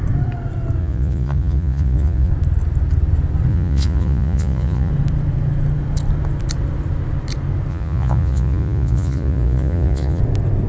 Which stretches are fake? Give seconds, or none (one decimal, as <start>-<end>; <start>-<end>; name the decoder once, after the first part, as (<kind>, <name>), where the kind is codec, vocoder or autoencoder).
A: 0.8-2.3 (vocoder, Vocos); 3.5-4.9; 7.7-10.2